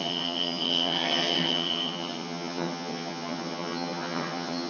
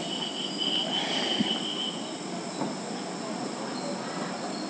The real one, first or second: second